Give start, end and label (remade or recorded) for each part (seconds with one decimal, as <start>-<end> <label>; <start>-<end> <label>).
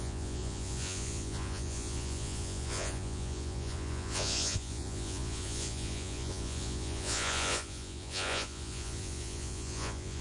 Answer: 0.0-10.2 remade